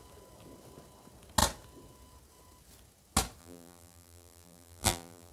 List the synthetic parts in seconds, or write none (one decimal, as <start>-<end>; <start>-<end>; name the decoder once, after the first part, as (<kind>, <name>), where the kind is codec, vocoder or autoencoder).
3.4-5.3 (vocoder, BigVGAN v2)